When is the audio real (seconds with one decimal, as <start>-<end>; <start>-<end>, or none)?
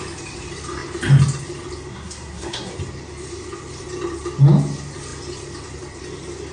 0.0-1.9; 2.7-6.5